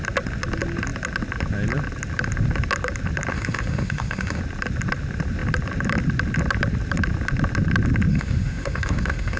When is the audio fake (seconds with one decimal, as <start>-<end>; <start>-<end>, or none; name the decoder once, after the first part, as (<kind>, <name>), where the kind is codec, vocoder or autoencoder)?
3.3-4.4 (autoencoder, DAC-VAE); 8.1-9.4

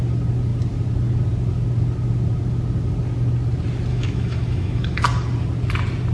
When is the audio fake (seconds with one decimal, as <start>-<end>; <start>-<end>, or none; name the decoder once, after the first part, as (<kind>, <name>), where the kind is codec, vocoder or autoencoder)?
3.9-5.0 (autoencoder, DAC-VAE)

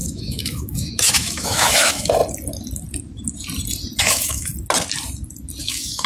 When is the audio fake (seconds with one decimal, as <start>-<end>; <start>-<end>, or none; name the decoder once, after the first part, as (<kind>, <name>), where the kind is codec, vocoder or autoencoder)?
0.0-2.2 (autoencoder, DAC-VAE); 4.0-4.5; 5.6-6.1

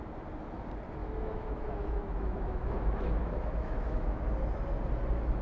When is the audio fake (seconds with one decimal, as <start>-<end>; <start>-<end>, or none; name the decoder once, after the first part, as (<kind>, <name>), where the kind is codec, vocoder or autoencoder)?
1.0-4.2 (autoencoder, DAC-VAE)

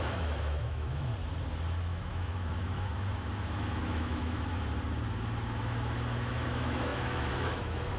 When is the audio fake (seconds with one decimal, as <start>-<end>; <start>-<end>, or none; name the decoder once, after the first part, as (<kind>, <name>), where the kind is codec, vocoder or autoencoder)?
0.0-1.1 (autoencoder, DAC-VAE); 1.8-4.5; 5.6-8.0

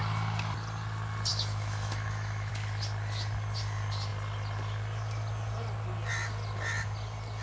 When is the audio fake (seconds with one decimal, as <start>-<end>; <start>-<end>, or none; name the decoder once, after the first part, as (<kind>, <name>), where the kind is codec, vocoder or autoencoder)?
1.3-2.5 (autoencoder, DAC-VAE)

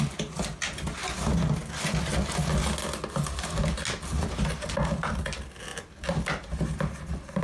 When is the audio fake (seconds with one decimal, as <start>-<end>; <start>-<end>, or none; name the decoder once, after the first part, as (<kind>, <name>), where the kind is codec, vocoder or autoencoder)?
none

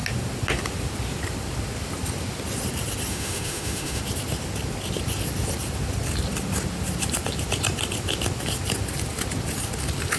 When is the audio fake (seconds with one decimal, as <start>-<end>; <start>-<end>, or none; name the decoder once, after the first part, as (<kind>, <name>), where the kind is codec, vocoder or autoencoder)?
3.1-4.0 (autoencoder, DAC-VAE)